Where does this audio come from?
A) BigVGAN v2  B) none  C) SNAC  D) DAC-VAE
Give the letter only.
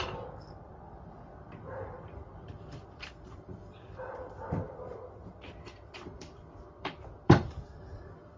A